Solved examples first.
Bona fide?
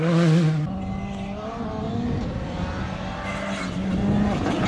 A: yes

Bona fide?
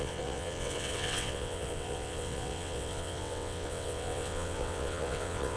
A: no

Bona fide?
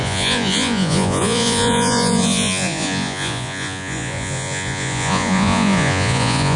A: no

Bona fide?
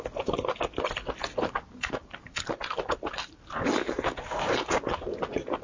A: yes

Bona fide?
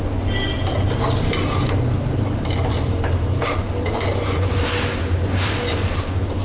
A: yes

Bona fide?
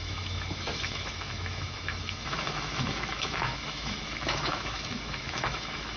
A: no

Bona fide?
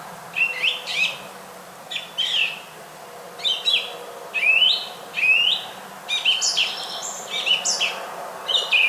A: yes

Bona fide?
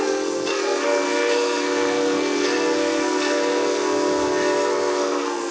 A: no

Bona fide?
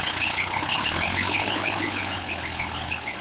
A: no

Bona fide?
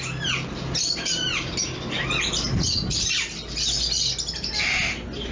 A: yes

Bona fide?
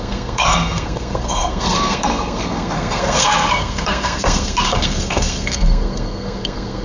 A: no